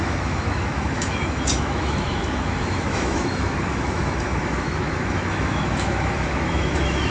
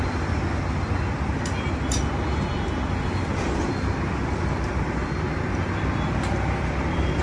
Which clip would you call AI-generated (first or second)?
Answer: first